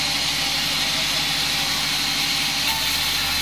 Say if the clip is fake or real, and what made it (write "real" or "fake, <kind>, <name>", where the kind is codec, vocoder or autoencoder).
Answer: real